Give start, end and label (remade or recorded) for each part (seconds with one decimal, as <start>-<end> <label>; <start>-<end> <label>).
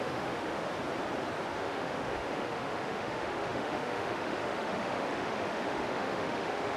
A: 0.0-0.7 remade; 0.7-1.5 recorded; 1.5-6.8 remade